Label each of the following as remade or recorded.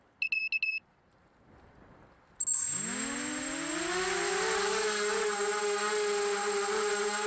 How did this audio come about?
recorded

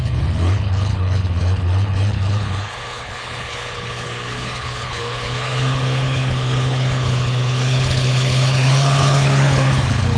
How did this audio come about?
remade